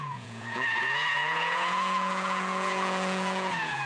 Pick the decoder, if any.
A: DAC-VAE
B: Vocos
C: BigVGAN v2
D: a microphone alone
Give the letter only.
B